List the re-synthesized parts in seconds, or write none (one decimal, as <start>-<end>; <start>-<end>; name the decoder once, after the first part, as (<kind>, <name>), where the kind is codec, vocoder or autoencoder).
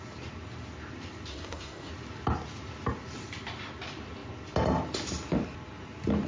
1.3-1.9 (codec, SNAC)